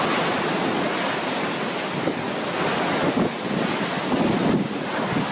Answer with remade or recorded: recorded